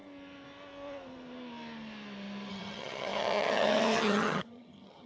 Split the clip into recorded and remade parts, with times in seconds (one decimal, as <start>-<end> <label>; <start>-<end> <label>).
0.0-2.5 recorded; 2.5-5.1 remade